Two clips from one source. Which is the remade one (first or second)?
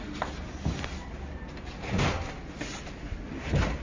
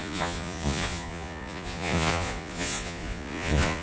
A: second